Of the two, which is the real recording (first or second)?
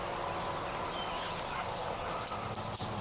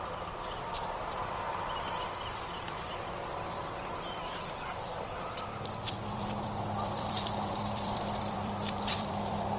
first